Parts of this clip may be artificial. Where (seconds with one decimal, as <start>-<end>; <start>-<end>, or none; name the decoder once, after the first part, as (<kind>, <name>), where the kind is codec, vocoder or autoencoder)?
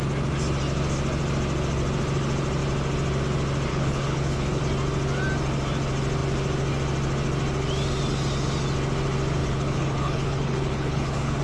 3.7-4.6 (codec, HILCodec); 9.4-11.4